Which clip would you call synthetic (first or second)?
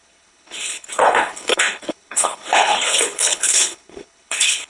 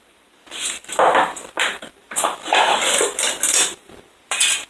first